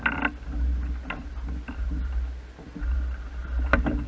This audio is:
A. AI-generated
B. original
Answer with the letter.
B